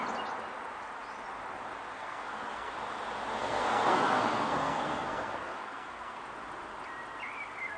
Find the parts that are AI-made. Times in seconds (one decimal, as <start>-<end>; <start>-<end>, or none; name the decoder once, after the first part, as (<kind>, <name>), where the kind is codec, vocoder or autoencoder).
1.9-2.7 (codec, SNAC); 3.4-6.2